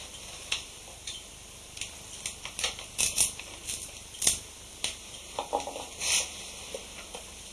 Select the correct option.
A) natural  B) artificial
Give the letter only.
A